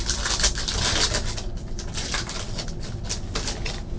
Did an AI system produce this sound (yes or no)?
no